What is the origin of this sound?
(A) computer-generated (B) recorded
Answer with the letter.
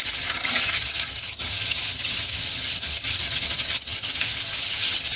A